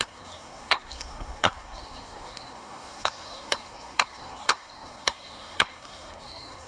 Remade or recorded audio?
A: remade